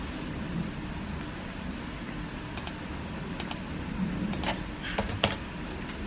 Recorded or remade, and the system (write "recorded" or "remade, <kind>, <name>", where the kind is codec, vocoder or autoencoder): recorded